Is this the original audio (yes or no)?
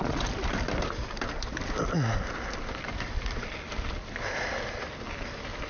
yes